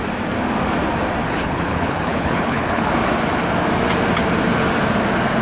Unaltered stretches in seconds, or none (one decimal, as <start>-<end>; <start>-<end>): 0.0-1.2; 2.9-5.4